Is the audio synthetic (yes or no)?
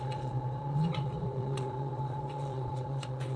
yes